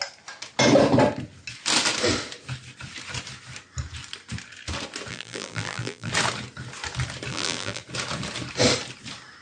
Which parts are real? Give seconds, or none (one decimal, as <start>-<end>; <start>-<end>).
0.0-5.1; 6.1-7.3; 7.8-9.4

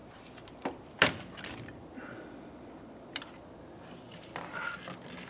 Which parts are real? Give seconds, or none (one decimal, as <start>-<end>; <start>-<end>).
3.2-5.3

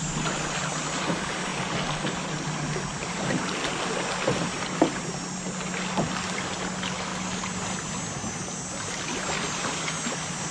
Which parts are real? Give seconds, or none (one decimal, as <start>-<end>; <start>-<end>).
0.0-2.9; 3.5-10.5

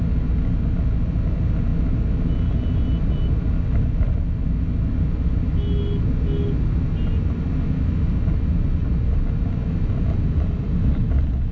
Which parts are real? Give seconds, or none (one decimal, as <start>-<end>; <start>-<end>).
0.0-11.5